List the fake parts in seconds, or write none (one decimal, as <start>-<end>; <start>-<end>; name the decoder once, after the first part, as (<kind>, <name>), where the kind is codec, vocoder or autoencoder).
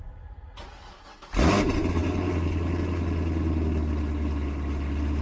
none